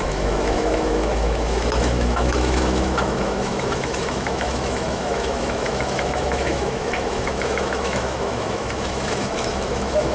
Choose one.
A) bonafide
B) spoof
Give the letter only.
B